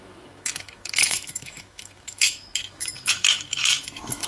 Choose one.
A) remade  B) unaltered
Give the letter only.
A